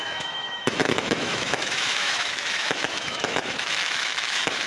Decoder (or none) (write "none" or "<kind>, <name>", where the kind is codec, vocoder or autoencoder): autoencoder, DAC-VAE